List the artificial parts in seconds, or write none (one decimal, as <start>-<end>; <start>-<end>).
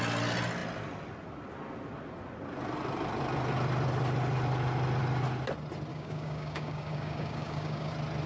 5.9-7.9